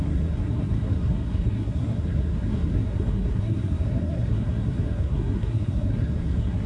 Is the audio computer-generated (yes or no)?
yes